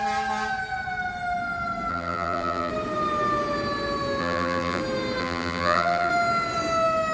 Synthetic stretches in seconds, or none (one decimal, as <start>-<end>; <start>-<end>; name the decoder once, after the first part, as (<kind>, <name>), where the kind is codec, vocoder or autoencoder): 1.9-2.7 (vocoder, BigVGAN v2); 4.2-4.8; 5.2-6.1